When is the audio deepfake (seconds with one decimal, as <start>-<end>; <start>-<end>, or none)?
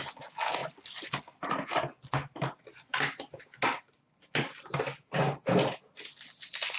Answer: none